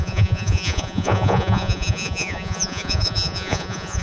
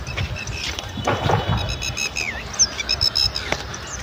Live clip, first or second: second